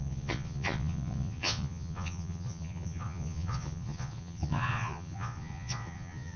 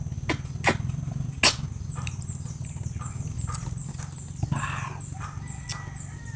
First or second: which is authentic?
second